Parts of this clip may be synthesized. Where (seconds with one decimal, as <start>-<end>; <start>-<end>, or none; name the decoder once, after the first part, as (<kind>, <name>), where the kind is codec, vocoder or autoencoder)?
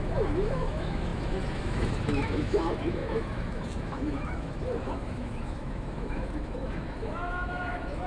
0.0-8.1 (autoencoder, DAC-VAE)